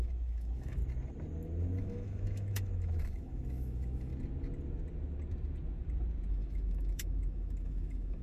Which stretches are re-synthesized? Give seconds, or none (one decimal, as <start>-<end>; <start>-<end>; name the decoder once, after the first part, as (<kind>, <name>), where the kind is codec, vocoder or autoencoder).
0.0-0.8 (autoencoder, DAC-VAE); 1.8-4.1; 6.3-8.2